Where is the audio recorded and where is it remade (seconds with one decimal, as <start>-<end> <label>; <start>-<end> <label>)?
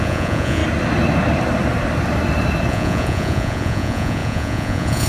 0.0-0.6 remade; 0.6-2.7 recorded; 2.7-5.1 remade